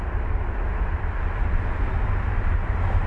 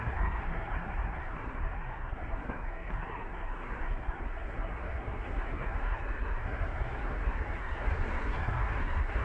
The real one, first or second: first